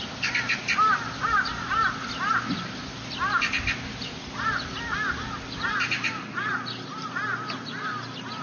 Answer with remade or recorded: recorded